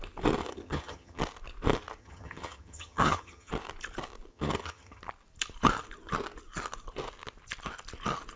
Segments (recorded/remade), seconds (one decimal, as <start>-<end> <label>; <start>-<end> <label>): 0.0-0.4 recorded; 0.4-1.2 remade; 1.2-2.0 recorded; 2.0-3.5 remade; 3.5-4.3 recorded; 4.3-5.0 remade; 5.0-8.4 recorded